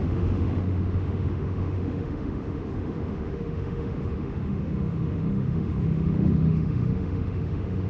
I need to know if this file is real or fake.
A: fake